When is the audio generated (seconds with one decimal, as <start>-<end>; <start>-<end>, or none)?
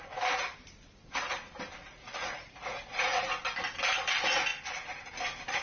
1.8-3.2